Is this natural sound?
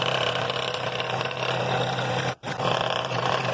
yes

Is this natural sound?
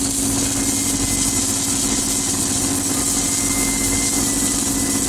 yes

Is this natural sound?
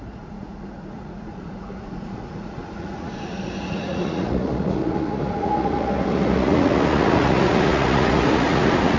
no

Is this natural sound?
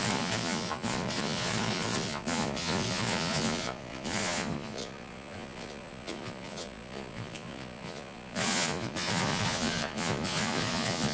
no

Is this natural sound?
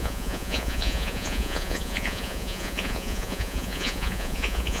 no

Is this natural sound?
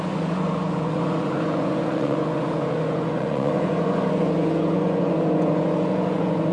no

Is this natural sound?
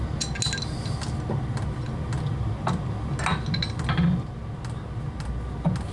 yes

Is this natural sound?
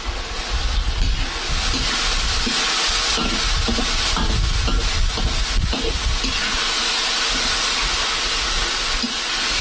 yes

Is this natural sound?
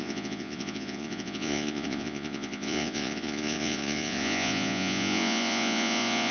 no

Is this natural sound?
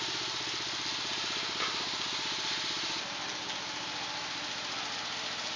yes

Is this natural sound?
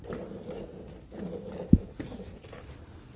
yes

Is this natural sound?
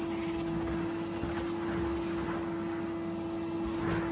yes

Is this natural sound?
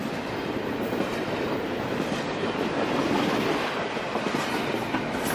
yes